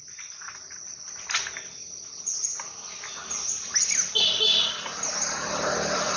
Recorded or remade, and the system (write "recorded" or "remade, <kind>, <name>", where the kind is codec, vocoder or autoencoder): recorded